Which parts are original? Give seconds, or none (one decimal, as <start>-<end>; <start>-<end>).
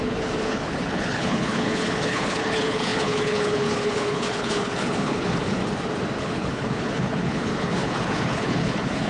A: 5.6-6.2